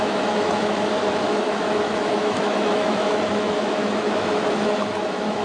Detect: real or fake fake